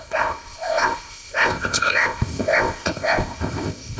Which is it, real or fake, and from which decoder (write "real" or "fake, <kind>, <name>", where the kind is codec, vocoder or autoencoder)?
fake, codec, ZipCodec